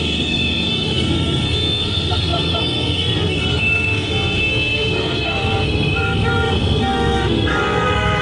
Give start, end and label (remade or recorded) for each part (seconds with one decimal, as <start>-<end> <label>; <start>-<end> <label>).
0.0-8.2 remade